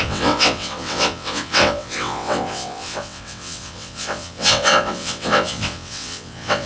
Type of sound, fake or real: fake